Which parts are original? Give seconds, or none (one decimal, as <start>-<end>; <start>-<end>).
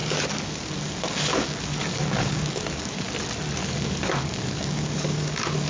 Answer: 3.1-3.6